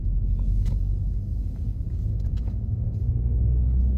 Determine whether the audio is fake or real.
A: fake